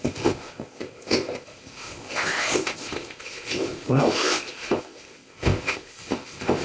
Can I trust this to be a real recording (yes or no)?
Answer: no